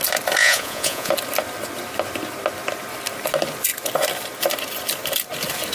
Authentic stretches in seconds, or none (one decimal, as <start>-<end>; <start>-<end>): 0.0-0.4; 1.1-5.7